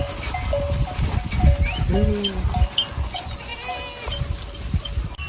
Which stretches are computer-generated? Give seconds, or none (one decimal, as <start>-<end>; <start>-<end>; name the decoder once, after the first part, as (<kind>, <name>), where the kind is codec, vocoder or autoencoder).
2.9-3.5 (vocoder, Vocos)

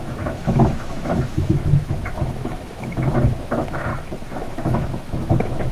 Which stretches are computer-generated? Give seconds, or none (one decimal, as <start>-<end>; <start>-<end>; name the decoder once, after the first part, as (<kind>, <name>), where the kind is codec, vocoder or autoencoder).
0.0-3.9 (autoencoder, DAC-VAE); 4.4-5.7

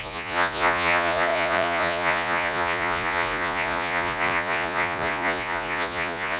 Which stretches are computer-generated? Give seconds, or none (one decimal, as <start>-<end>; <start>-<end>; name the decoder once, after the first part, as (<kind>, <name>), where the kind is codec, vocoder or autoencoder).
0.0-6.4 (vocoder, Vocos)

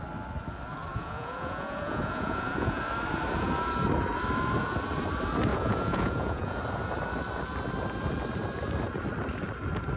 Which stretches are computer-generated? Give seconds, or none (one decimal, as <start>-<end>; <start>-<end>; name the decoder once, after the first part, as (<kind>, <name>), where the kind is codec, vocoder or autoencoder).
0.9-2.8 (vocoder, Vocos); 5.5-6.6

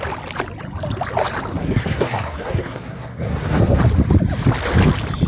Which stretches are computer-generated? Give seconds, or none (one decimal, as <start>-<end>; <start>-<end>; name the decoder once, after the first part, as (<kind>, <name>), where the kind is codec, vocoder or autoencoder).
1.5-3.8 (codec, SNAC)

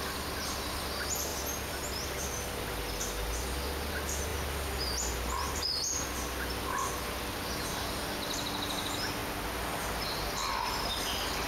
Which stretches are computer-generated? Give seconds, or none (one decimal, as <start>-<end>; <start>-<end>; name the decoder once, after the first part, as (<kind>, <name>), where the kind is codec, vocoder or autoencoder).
none